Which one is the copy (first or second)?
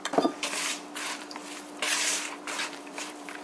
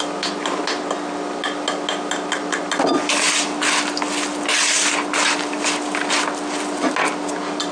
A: first